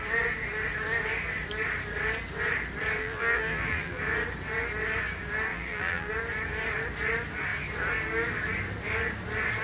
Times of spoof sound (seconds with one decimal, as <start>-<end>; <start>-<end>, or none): 3.0-4.0; 5.5-6.1